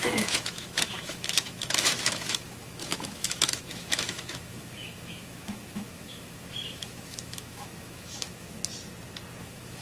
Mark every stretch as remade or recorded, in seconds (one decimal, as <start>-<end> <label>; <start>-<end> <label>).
0.0-8.6 remade; 8.6-9.4 recorded; 9.4-9.8 remade

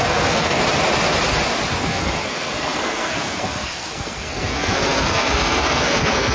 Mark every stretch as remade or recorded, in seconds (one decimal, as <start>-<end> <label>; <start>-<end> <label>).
0.0-0.6 remade; 0.6-1.8 recorded; 1.8-6.3 remade